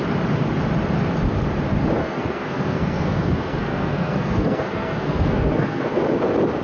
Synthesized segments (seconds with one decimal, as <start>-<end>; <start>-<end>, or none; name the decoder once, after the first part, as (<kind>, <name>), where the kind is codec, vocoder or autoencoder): 2.0-6.0 (codec, SNAC)